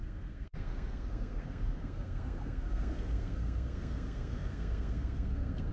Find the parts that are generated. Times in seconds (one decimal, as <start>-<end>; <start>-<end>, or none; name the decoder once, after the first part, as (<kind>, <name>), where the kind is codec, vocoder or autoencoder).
0.0-5.7 (codec, SNAC)